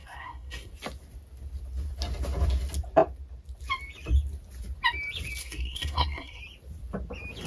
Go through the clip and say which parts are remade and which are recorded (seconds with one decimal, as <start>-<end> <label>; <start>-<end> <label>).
0.0-0.7 remade; 0.7-5.4 recorded; 5.4-6.4 remade; 6.4-7.5 recorded

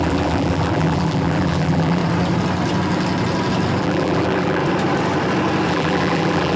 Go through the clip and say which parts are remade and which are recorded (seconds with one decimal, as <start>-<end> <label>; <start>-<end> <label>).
0.0-2.0 remade; 2.0-3.8 recorded; 3.8-4.6 remade; 4.6-5.7 recorded; 5.7-6.6 remade

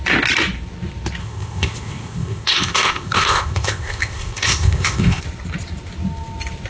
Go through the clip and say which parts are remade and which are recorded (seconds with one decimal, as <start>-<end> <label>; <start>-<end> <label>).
0.0-1.2 recorded; 1.2-5.2 remade; 5.2-6.7 recorded

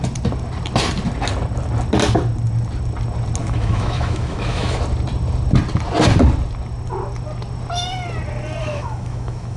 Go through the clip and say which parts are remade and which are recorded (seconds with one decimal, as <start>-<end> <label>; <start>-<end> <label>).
0.0-3.4 recorded; 3.4-4.8 remade; 4.8-8.6 recorded; 8.6-9.6 remade

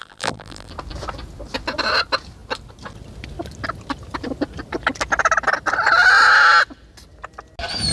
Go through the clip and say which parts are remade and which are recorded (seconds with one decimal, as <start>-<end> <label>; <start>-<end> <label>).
0.0-0.7 remade; 0.7-7.9 recorded

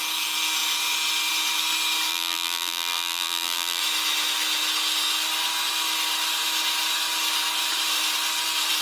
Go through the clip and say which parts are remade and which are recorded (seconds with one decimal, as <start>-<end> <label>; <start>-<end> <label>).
0.0-2.1 recorded; 2.1-3.8 remade; 3.8-8.8 recorded